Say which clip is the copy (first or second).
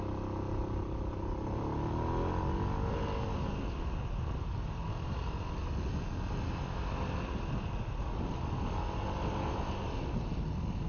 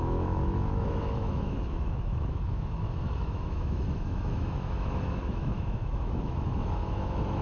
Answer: second